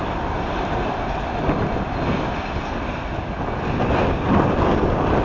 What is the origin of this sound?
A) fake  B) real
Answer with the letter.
B